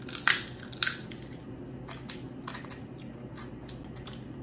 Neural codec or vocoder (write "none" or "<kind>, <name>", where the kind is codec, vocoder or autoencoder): none